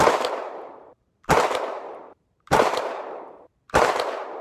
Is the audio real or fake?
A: fake